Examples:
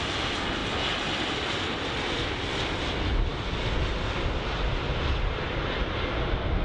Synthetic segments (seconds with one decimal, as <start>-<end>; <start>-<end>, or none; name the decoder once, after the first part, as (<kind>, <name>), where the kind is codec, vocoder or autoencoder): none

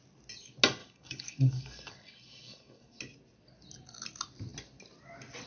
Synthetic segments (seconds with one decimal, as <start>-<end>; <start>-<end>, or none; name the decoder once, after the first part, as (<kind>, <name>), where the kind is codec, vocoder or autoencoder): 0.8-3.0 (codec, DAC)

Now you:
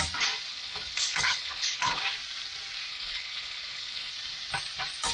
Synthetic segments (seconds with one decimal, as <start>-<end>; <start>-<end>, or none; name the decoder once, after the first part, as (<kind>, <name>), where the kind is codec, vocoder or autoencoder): 0.5-2.0 (codec, HILCodec); 2.9-4.1